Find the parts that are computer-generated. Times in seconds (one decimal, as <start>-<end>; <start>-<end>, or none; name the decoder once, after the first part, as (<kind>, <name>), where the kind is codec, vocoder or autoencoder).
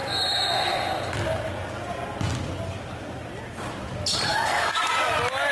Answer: 4.3-4.9 (codec, SNAC)